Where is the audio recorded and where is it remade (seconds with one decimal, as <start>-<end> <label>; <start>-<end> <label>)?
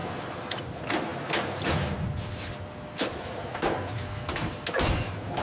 0.0-5.4 recorded